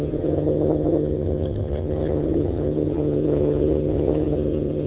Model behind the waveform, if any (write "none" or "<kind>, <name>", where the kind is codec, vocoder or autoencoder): vocoder, HiFi-GAN